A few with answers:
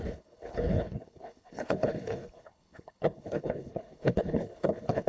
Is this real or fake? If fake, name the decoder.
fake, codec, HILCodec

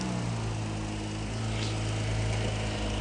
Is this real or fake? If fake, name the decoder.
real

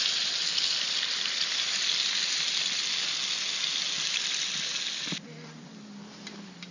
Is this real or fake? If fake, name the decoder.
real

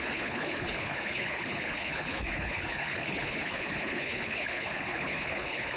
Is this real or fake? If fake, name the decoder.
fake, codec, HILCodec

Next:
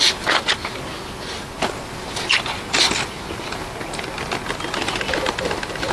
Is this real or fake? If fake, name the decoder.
real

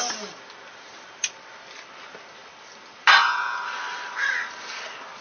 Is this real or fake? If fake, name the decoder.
real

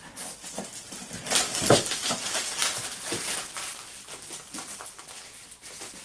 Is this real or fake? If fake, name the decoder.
real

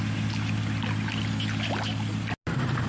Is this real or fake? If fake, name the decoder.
real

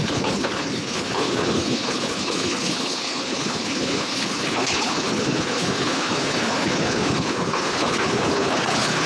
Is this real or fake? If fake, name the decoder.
fake, codec, HILCodec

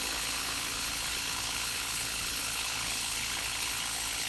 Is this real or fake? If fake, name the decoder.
fake, codec, HILCodec